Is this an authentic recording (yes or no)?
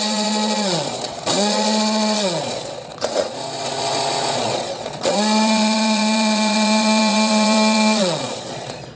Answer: no